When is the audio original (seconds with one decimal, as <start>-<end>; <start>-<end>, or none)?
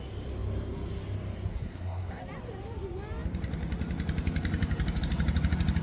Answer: 0.0-1.5; 2.2-5.8